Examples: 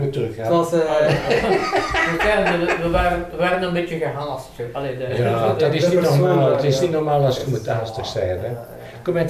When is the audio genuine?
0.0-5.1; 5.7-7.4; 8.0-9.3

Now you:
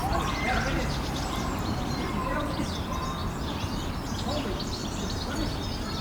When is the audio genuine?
2.1-3.2; 3.9-4.8; 5.6-6.0

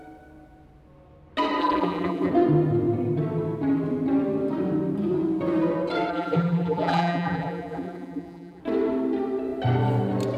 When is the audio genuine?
0.0-1.6; 2.3-6.1; 8.6-10.4

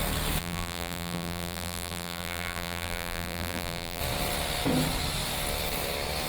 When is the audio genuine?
0.0-0.4; 4.0-6.3

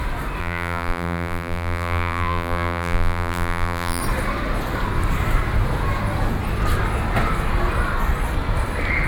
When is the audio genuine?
0.0-0.4; 4.0-9.1